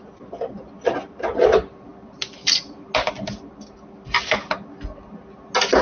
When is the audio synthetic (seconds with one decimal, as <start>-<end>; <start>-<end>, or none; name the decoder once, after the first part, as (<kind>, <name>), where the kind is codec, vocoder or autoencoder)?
none